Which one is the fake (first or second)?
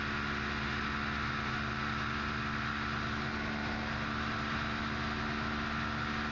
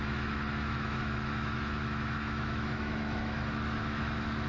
second